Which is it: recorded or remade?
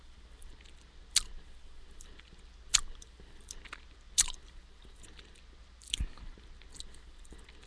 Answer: recorded